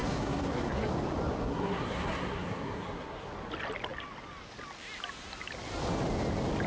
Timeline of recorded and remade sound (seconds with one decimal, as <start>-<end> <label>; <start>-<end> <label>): 0.0-0.9 remade; 0.9-1.4 recorded; 1.4-3.3 remade; 3.3-6.7 recorded